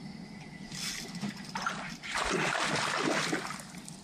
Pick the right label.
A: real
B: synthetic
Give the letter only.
A